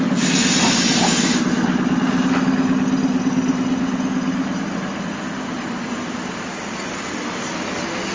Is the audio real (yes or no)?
yes